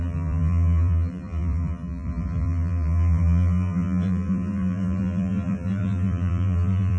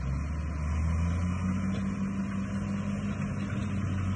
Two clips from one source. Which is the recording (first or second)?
second